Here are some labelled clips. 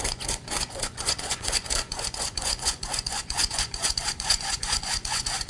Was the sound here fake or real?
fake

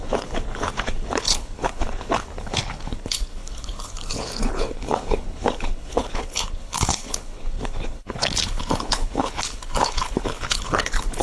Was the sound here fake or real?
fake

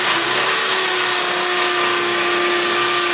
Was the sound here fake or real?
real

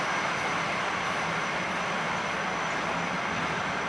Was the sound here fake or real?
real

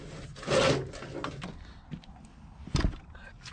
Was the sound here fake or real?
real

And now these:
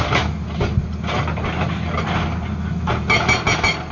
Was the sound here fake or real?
real